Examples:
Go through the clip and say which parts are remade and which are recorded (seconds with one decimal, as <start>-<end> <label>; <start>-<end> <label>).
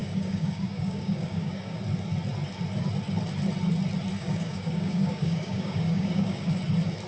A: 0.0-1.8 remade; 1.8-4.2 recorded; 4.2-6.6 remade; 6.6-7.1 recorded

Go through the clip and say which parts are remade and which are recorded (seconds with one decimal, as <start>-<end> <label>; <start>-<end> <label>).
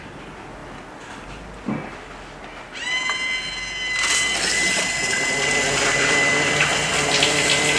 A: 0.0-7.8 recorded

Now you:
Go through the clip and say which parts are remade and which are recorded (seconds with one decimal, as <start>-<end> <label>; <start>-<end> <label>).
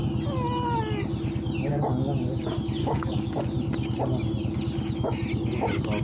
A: 0.0-2.8 recorded; 2.8-3.4 remade; 3.4-6.0 recorded